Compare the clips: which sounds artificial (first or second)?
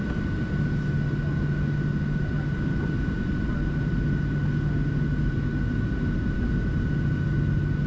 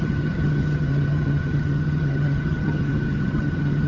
second